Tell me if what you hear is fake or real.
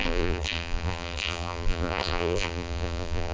fake